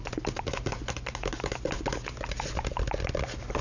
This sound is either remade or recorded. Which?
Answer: recorded